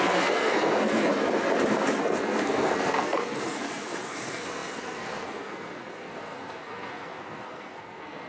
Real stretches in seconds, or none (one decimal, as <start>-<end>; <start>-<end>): 1.1-2.0